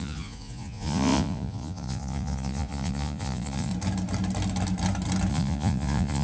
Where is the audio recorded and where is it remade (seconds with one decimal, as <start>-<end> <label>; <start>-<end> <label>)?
0.0-3.7 remade; 3.7-5.3 recorded; 5.3-6.2 remade